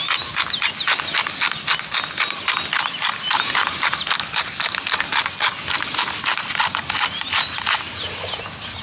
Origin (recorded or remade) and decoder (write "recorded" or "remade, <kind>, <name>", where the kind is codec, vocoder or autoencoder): recorded